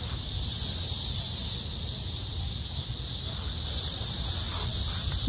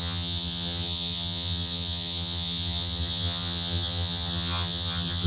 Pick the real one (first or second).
first